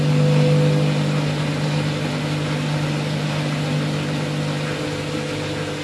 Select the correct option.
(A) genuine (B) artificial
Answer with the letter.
A